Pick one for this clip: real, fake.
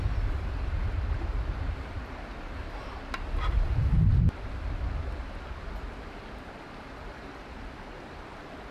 real